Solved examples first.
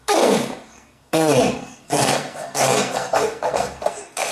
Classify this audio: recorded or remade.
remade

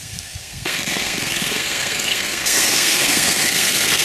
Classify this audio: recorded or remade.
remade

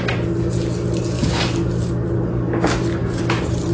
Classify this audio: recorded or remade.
recorded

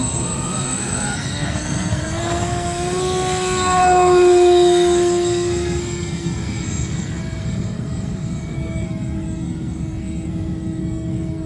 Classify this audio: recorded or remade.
remade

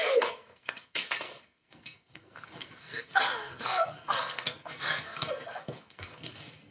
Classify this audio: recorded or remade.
remade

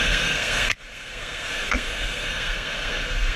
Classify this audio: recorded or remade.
remade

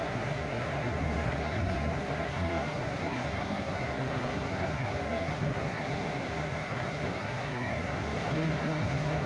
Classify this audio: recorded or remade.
remade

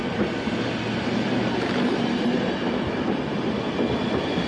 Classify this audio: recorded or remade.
recorded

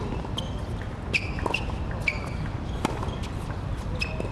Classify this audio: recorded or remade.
recorded